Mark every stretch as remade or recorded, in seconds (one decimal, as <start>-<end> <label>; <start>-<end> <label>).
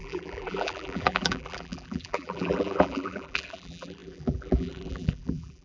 0.0-5.6 remade